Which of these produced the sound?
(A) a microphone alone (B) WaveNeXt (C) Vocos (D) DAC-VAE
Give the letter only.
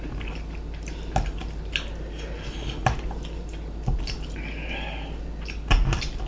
A